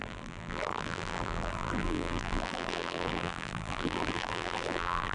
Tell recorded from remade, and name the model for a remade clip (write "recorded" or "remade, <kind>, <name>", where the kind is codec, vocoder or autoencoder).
remade, vocoder, BigVGAN v2